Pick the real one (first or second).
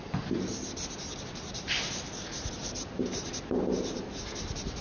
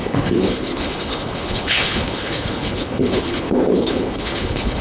first